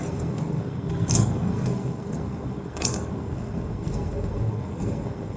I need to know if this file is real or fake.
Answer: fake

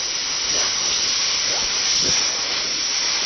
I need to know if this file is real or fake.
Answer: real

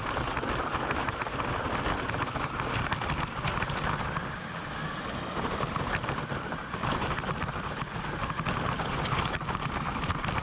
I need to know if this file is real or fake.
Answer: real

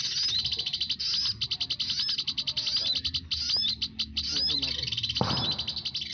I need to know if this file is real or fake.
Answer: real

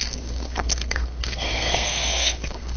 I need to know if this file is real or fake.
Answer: fake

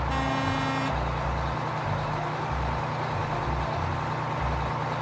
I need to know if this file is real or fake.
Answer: real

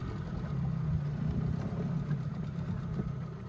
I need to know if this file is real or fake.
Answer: real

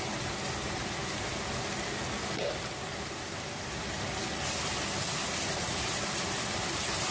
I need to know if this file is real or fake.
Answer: real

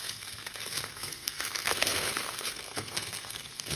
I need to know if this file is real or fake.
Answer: fake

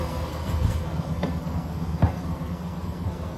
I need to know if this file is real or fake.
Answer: fake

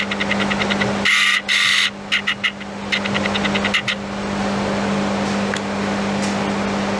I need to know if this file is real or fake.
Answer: real